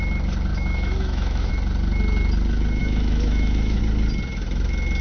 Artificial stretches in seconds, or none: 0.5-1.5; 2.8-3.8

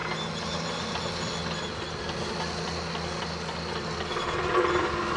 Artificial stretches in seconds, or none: none

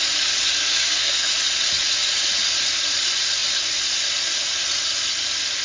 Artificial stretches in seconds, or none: 0.6-1.3

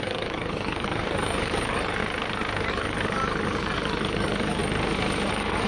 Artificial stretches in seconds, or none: 0.0-2.0; 2.7-4.6; 5.3-5.7

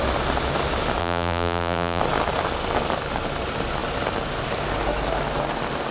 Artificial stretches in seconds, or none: 1.0-2.0

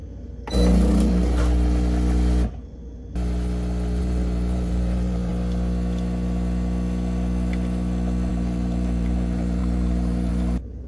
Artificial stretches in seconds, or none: 4.0-5.3; 8.3-10.9